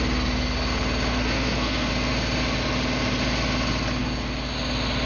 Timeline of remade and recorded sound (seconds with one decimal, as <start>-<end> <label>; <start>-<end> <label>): 0.0-1.1 recorded; 1.1-1.9 remade; 1.9-5.1 recorded